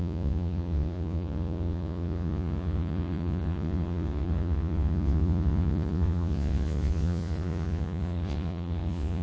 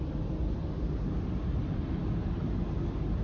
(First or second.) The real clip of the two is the second